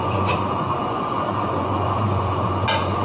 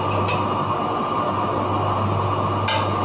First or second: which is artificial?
first